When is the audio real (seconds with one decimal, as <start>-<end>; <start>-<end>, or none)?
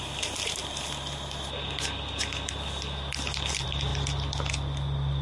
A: 0.6-3.5; 3.9-5.2